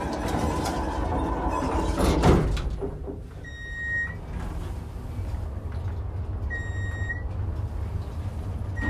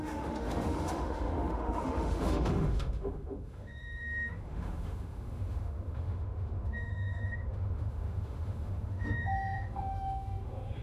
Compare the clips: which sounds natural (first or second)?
first